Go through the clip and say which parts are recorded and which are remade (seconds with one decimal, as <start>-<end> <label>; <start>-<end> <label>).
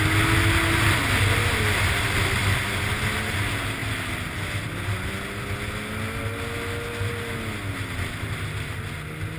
0.0-9.4 recorded